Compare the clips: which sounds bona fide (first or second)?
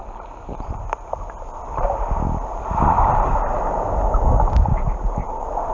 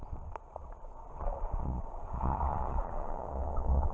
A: first